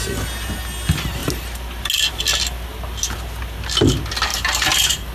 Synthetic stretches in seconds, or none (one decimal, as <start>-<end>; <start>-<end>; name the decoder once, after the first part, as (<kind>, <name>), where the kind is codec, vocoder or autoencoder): 4.3-5.1 (vocoder, BigVGAN v2)